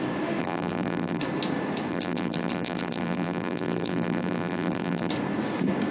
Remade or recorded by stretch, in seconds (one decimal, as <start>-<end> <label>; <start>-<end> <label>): 0.0-0.4 recorded; 0.4-1.2 remade; 1.2-1.9 recorded; 1.9-5.1 remade; 5.1-5.9 recorded